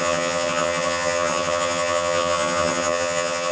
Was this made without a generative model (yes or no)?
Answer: no